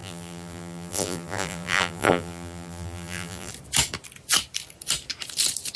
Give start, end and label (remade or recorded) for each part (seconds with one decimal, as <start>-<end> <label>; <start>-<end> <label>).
0.0-3.5 remade; 3.5-5.8 recorded